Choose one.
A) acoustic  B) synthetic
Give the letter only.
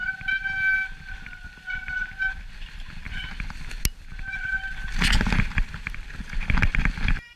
A